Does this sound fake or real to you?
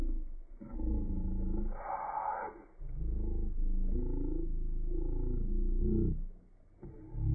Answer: real